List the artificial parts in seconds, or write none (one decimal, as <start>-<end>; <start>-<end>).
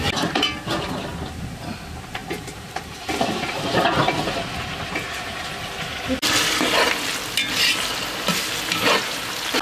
2.2-4.2